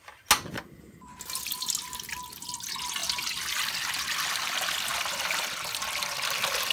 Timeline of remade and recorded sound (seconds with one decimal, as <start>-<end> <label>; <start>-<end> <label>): 0.0-3.0 recorded; 3.0-3.7 remade; 3.7-4.9 recorded; 4.9-5.4 remade; 5.4-6.7 recorded